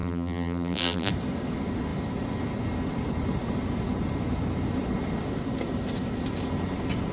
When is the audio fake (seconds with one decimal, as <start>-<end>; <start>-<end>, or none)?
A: 0.0-1.1